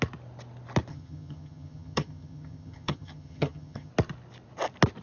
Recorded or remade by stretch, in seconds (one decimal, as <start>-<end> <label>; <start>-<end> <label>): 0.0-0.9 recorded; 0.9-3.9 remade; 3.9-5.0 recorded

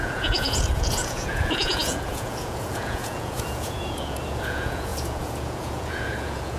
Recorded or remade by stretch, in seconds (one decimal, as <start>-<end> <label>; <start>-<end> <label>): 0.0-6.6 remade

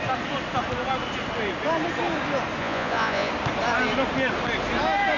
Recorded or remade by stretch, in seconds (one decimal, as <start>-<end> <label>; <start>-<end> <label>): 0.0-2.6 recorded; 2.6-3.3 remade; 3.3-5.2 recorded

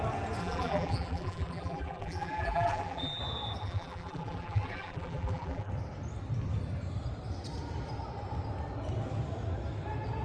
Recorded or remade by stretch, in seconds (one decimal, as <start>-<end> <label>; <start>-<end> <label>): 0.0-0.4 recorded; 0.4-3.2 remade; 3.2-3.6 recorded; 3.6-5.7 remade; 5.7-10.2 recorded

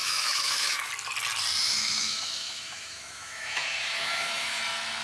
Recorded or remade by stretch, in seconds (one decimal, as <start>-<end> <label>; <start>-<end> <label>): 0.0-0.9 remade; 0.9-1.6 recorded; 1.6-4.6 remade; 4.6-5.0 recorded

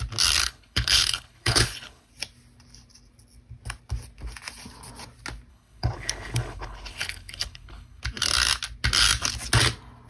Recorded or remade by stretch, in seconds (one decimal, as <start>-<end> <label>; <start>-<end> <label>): 0.0-0.4 recorded; 0.4-2.1 remade; 2.1-5.5 recorded; 5.5-8.0 remade; 8.0-10.1 recorded

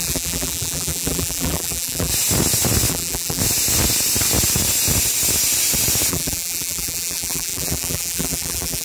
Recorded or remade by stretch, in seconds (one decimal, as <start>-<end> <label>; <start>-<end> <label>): 0.0-2.1 remade; 2.1-2.9 recorded; 2.9-3.4 remade; 3.4-6.1 recorded; 6.1-8.8 remade

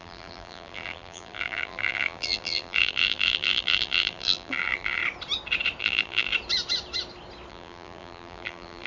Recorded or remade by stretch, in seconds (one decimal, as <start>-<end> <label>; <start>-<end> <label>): 0.0-5.0 remade; 5.0-5.8 recorded; 5.8-6.3 remade; 6.3-7.5 recorded; 7.5-8.9 remade